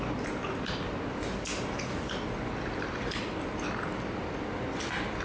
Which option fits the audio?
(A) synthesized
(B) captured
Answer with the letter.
B